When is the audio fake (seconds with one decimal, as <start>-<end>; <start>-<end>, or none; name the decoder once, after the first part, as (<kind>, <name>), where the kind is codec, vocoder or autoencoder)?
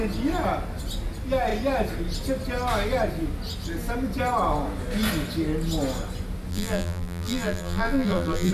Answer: 6.5-8.5 (vocoder, BigVGAN v2)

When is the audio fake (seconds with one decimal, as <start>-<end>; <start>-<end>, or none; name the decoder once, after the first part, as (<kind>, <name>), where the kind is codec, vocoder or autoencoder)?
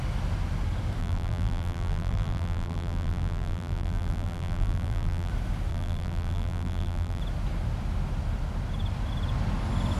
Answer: 1.0-5.3 (vocoder, BigVGAN v2); 5.7-7.2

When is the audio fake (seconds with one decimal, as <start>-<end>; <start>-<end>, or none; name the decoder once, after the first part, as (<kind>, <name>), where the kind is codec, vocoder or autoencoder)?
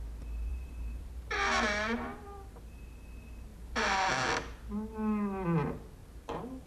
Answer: 0.5-2.6 (vocoder, BigVGAN v2); 3.5-4.3; 6.0-6.7